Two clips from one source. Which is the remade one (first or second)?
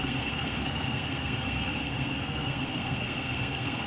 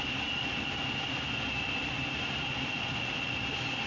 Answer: first